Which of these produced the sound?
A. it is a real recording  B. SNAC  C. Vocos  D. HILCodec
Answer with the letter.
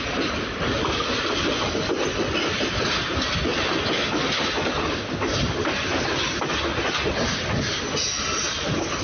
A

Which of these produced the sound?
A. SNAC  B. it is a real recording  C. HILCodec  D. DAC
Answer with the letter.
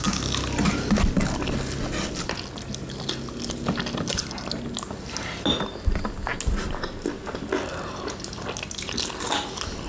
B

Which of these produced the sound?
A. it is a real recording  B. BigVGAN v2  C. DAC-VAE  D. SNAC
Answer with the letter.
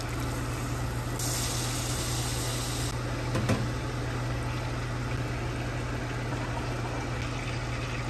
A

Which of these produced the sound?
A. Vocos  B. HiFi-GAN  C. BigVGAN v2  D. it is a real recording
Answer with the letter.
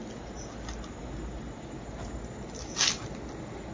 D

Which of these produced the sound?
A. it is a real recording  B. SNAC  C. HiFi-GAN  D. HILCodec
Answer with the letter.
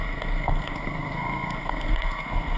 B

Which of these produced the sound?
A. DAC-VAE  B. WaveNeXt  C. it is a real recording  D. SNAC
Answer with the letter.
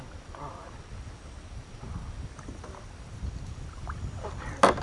C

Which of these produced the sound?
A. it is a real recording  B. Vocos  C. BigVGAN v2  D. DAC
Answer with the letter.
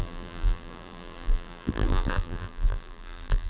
C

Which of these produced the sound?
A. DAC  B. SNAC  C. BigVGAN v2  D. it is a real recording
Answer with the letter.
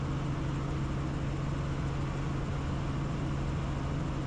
D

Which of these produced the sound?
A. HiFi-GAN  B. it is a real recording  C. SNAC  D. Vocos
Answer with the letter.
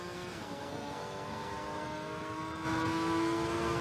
C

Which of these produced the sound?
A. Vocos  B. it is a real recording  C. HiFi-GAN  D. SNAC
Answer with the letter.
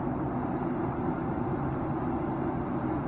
B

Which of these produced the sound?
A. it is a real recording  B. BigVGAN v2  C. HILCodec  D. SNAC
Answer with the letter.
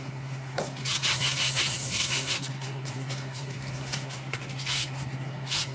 D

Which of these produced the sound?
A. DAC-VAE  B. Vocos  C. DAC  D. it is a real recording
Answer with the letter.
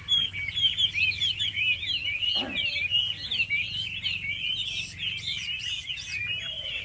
D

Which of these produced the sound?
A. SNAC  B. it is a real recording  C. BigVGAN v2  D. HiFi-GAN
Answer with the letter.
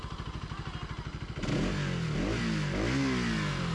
B